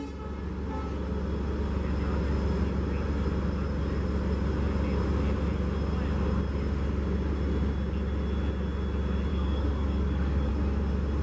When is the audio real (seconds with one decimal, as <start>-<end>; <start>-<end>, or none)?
0.0-9.3; 10.5-11.2